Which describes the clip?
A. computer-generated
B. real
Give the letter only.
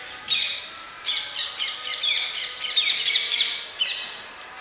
A